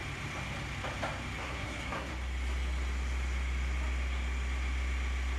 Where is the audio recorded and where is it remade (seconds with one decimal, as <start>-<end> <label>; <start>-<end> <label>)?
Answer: 0.0-1.4 recorded; 1.4-2.1 remade; 2.1-5.4 recorded